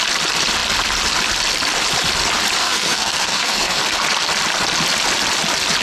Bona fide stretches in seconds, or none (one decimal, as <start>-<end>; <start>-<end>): 0.0-2.6; 3.8-5.8